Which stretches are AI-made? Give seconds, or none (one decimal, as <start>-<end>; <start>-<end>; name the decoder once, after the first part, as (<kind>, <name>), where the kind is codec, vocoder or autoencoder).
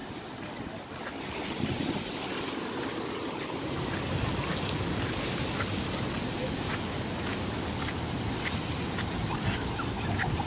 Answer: none